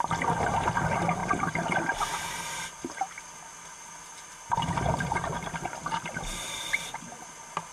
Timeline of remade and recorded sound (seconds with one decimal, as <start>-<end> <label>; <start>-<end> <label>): 0.0-7.7 recorded